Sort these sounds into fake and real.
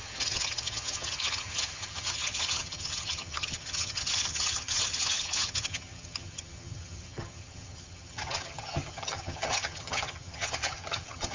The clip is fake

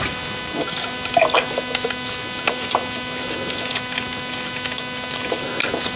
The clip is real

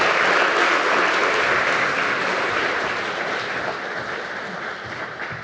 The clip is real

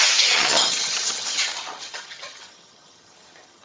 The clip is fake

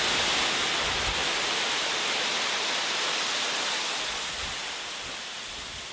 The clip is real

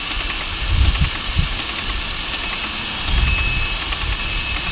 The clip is real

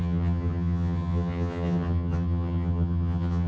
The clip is fake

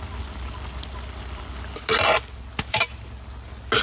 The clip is real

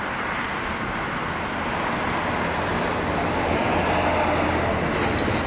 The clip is real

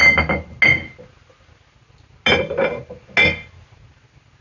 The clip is real